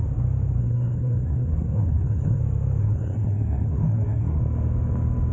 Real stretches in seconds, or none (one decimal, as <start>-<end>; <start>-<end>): 0.0-0.6; 2.4-2.8; 4.4-5.3